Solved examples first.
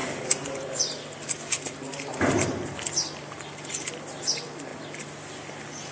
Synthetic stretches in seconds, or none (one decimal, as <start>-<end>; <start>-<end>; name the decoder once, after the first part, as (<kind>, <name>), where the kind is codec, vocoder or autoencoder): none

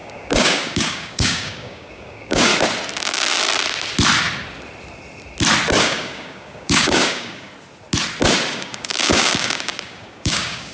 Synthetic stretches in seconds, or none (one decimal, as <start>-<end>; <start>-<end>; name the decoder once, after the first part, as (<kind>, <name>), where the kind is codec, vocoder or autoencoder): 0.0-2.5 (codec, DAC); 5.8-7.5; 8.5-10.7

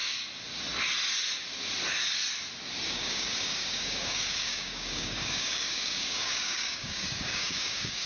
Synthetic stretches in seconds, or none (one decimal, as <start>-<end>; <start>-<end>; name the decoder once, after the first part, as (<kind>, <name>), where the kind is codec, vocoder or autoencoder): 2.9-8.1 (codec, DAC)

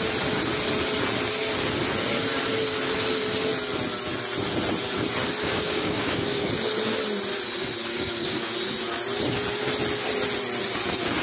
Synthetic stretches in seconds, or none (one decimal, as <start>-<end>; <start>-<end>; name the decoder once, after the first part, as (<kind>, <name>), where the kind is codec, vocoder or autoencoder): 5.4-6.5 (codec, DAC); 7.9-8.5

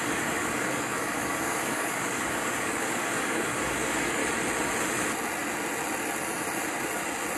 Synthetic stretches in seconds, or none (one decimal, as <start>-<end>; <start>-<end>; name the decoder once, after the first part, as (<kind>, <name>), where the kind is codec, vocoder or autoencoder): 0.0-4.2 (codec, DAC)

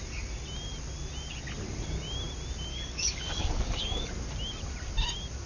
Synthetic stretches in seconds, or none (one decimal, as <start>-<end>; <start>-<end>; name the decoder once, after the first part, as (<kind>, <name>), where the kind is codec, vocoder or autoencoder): 2.7-4.1 (codec, DAC)